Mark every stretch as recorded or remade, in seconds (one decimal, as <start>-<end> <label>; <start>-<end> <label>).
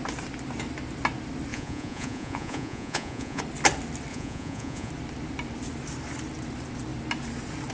0.0-1.5 recorded; 1.5-3.4 remade; 3.4-4.1 recorded; 4.1-4.9 remade; 4.9-7.7 recorded